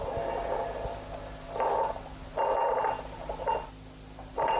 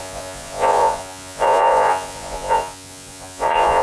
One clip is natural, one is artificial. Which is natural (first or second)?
first